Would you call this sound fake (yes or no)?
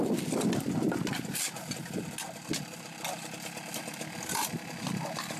no